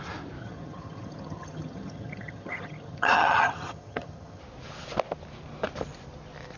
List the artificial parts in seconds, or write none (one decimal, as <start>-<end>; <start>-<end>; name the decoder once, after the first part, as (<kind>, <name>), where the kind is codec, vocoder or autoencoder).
0.4-4.4 (vocoder, HiFi-GAN)